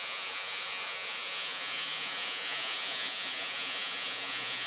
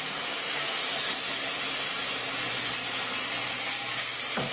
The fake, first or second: first